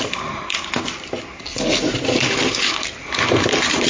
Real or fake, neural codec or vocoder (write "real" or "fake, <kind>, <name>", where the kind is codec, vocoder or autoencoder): real